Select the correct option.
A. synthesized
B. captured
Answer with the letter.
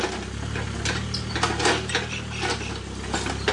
B